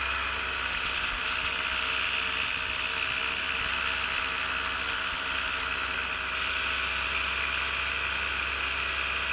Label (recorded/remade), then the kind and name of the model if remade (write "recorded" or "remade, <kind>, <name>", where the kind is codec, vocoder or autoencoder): recorded